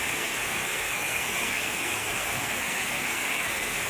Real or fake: fake